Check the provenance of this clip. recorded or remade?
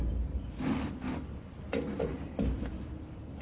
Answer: remade